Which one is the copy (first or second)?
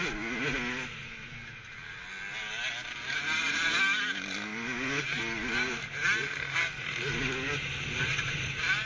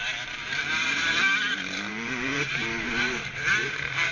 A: second